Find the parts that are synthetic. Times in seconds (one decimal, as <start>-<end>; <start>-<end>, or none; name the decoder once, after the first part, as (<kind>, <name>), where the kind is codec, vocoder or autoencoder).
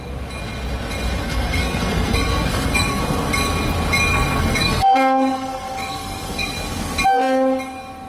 1.2-3.3 (codec, SNAC); 4.1-6.5